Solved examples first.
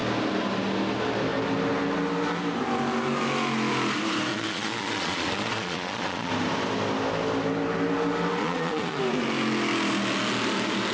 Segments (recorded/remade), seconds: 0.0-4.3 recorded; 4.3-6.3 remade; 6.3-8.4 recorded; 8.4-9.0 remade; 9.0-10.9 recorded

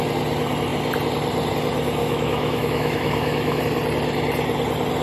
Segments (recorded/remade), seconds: 0.0-2.0 recorded; 2.0-3.6 remade; 3.6-5.0 recorded

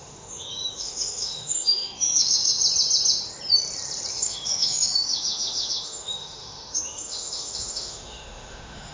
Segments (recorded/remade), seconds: 0.0-2.6 remade; 2.6-4.1 recorded; 4.1-8.9 remade

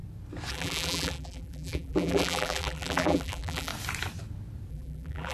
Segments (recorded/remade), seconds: 0.0-0.5 recorded; 0.5-3.7 remade; 3.7-4.7 recorded; 4.7-5.3 remade

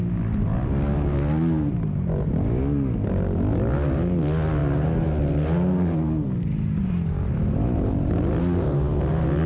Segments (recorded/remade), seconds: 0.0-9.5 recorded